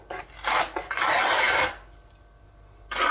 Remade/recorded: recorded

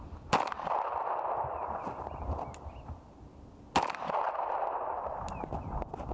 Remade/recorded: recorded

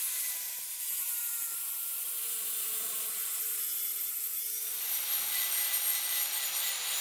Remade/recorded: remade